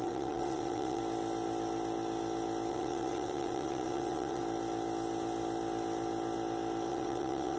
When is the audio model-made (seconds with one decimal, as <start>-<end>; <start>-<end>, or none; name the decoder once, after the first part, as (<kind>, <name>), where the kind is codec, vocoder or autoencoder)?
0.0-1.0 (vocoder, WaveNeXt); 2.7-4.4; 6.9-7.6